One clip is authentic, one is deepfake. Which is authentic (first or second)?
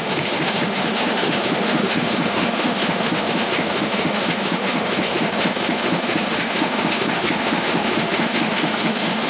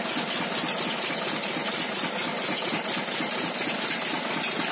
second